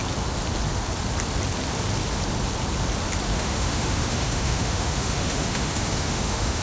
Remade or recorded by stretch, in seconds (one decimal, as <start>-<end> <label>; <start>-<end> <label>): 0.0-3.3 recorded; 3.3-6.6 remade

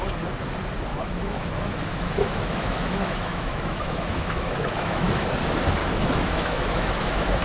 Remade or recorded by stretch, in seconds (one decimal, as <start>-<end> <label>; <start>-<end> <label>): 0.0-0.9 recorded; 0.9-5.3 remade; 5.3-5.8 recorded; 5.8-7.4 remade